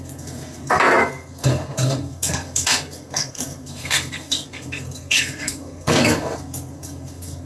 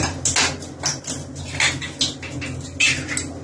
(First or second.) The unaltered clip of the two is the second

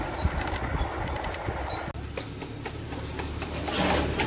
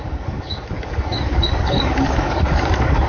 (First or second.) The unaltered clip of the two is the first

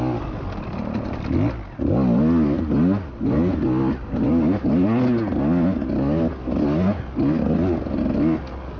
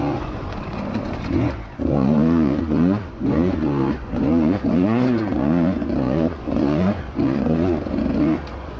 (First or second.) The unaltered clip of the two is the first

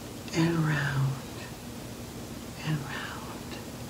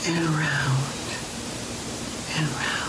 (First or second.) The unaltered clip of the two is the first